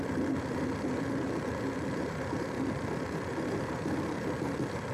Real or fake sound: real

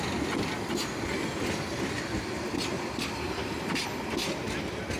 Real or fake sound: real